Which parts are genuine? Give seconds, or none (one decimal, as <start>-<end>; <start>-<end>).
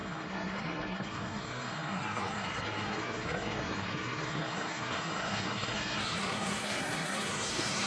none